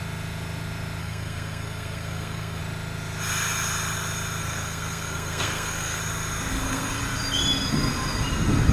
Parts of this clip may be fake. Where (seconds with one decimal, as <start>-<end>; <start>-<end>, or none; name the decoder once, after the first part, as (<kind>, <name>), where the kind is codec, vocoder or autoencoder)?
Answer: 1.0-2.6 (codec, SNAC); 4.4-6.0; 6.5-7.0